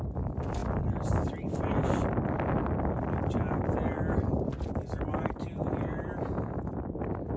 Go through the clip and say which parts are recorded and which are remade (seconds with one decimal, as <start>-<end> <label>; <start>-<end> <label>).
0.0-5.6 recorded; 5.6-6.7 remade; 6.7-7.4 recorded